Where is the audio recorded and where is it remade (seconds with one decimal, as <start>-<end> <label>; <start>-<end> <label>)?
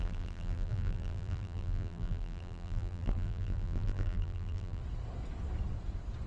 0.0-4.8 remade; 4.8-6.3 recorded